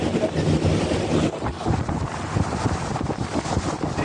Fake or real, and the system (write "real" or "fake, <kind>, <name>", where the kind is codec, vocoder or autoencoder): real